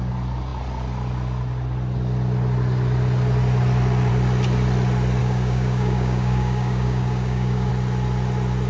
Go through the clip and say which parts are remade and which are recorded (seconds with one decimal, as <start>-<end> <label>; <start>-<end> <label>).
0.0-5.2 recorded; 5.2-7.7 remade; 7.7-8.7 recorded